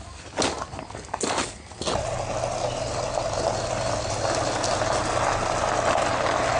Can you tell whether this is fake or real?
real